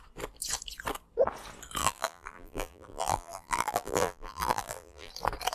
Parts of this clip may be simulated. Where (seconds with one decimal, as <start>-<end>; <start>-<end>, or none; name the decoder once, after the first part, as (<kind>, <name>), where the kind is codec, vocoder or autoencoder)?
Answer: 1.8-5.1 (vocoder, BigVGAN v2)